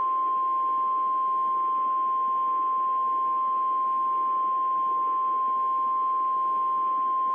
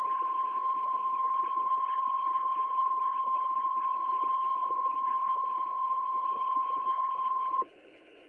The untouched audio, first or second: first